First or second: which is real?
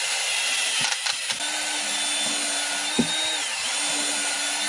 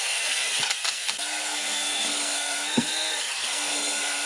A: first